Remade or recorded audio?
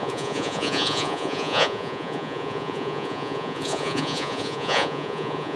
remade